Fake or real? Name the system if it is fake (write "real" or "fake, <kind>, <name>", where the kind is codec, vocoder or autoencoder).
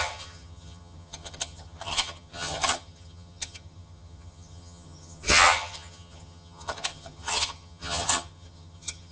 fake, vocoder, HiFi-GAN